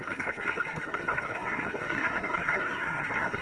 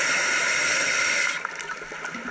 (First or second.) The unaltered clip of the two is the second